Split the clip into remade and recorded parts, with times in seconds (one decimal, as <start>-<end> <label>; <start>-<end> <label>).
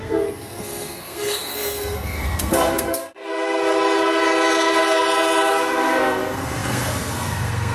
0.0-3.6 remade; 3.6-5.5 recorded; 5.5-7.7 remade